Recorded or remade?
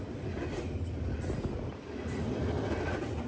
recorded